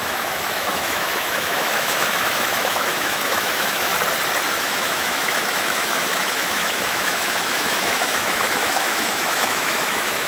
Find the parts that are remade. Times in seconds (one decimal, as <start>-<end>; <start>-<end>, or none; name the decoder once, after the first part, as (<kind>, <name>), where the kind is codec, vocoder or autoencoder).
0.0-3.9 (autoencoder, DAC-VAE); 4.5-10.3